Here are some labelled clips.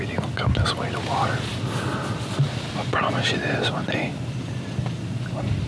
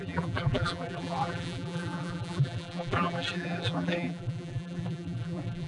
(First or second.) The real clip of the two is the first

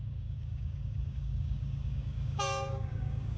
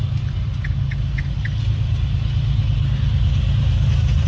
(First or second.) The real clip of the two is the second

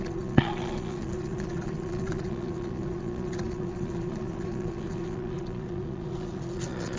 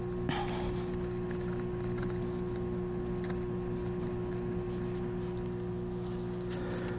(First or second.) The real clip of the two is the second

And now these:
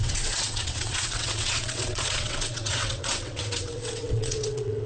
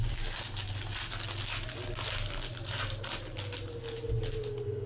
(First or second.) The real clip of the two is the second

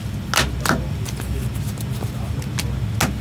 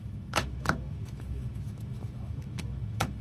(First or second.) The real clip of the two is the first